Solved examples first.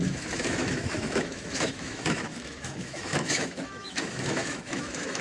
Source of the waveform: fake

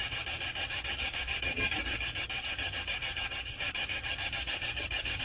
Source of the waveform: fake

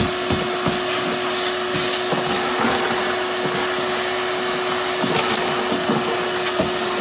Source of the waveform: real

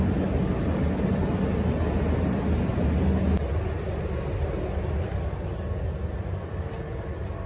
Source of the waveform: real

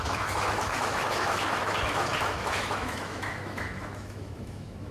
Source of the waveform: fake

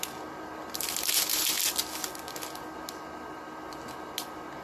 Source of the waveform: real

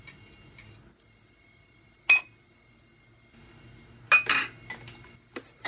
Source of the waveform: real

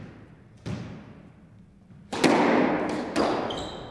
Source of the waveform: real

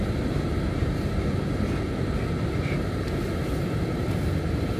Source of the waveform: real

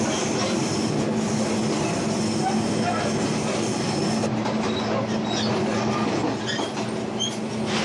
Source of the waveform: real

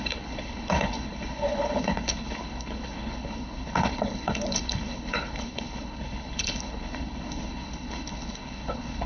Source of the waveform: fake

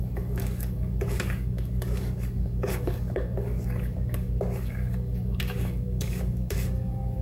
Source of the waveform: fake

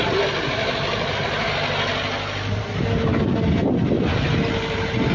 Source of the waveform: real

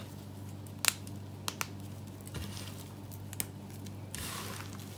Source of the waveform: real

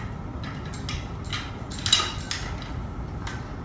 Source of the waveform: real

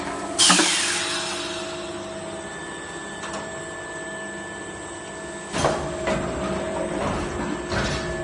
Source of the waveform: real